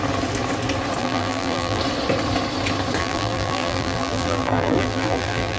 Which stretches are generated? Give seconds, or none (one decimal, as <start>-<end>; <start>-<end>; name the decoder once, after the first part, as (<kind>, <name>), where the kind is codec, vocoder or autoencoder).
1.0-1.8 (vocoder, BigVGAN v2); 3.0-5.6